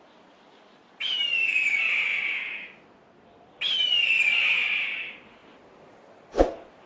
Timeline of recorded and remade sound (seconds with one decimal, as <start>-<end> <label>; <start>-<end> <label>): 0.0-6.9 recorded